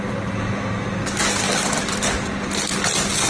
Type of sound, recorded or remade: recorded